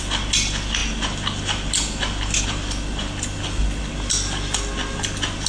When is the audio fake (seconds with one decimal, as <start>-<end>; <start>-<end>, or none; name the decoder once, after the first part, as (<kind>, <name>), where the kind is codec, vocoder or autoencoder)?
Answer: none